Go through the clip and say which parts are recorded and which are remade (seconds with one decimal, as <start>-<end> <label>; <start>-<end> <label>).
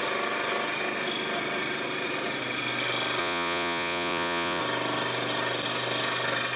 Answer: 0.0-3.2 recorded; 3.2-4.6 remade; 4.6-6.6 recorded